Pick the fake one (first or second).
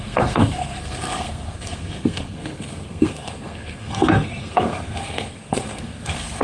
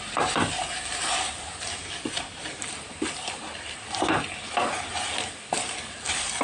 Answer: first